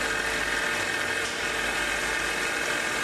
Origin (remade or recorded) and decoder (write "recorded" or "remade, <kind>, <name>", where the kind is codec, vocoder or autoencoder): recorded